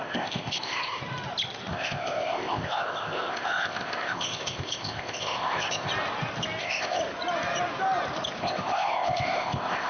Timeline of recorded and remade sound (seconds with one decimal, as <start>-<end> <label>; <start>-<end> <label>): 0.0-1.0 remade; 1.0-1.7 recorded; 1.7-5.9 remade; 5.9-6.6 recorded; 6.6-7.0 remade; 7.0-8.4 recorded; 8.4-9.9 remade